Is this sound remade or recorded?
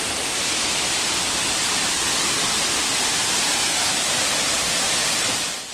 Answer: remade